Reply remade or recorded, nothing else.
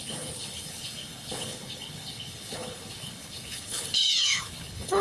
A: remade